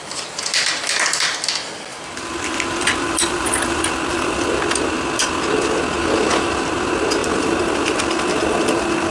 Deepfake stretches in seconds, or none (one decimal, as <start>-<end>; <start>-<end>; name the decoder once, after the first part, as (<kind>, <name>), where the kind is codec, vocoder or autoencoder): 1.9-4.7 (vocoder, BigVGAN v2); 7.2-9.1